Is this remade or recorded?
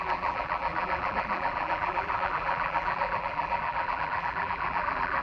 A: remade